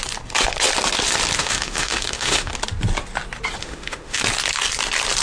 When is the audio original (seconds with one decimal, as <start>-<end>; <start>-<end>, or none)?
0.0-1.4; 2.5-3.6; 4.2-5.2